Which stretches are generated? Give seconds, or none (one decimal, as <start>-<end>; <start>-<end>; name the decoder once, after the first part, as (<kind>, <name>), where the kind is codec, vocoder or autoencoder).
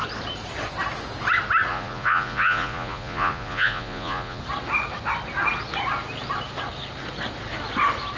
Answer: 1.7-4.4 (vocoder, Vocos)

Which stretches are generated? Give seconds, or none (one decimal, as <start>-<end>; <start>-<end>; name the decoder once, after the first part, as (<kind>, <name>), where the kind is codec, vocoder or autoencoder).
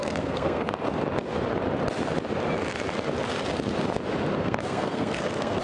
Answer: 0.0-0.7 (codec, SNAC); 4.4-5.6